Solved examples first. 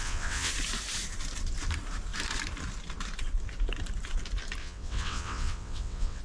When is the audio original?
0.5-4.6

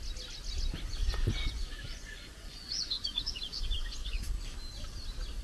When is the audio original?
0.0-1.0; 4.2-5.4

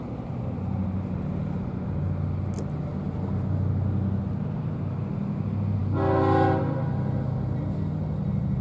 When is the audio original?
0.0-8.6